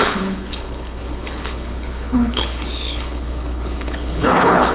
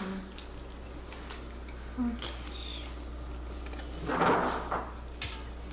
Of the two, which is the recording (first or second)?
second